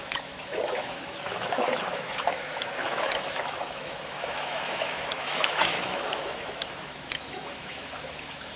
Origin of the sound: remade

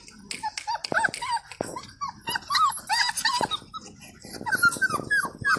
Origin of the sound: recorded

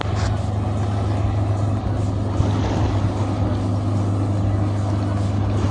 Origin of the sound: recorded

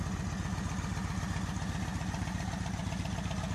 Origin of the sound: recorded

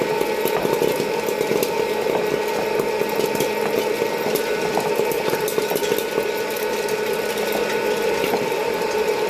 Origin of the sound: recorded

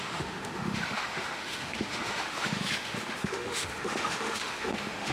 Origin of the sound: remade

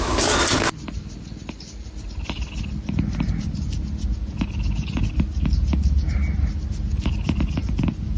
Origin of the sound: recorded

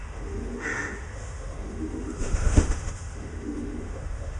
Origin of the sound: remade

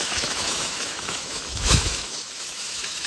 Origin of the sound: remade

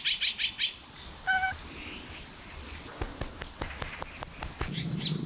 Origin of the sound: recorded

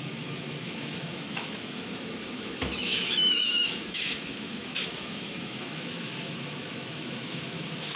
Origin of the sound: remade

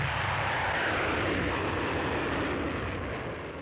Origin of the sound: recorded